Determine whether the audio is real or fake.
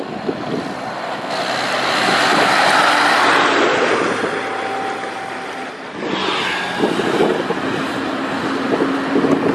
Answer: real